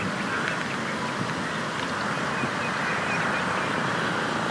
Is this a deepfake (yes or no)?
no